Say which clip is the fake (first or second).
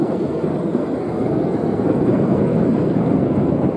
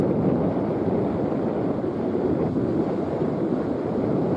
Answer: first